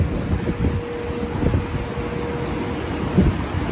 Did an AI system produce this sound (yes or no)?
no